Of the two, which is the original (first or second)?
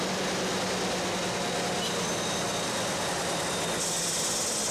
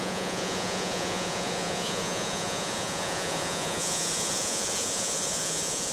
first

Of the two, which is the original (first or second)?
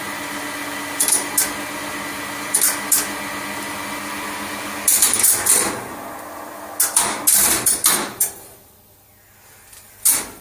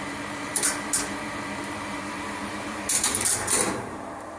first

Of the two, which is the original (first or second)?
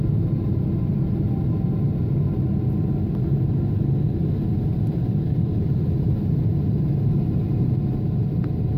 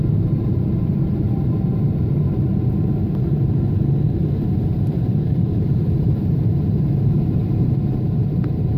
first